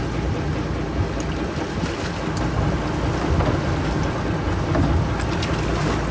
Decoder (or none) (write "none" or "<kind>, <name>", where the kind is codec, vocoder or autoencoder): none